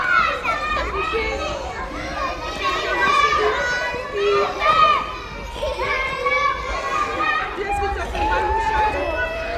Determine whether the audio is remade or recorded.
recorded